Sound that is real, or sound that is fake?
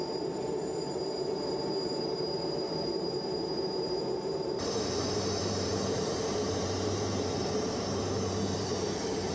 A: fake